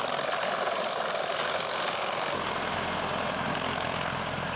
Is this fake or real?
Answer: real